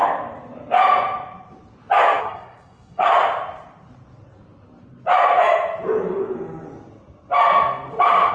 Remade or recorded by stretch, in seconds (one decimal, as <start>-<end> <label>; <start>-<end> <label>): 0.0-2.2 recorded; 2.2-3.1 remade; 3.1-8.3 recorded